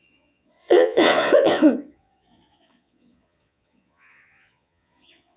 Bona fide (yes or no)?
no